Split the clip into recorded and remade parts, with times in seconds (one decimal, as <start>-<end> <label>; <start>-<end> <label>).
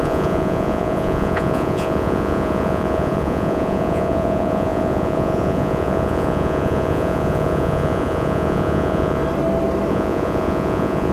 0.0-9.2 remade; 9.2-9.9 recorded; 9.9-11.1 remade